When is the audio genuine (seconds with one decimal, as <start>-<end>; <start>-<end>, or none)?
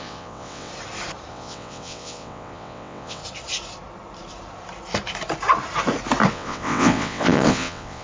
0.7-1.3; 3.2-6.3